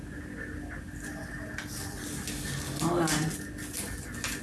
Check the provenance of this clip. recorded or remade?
recorded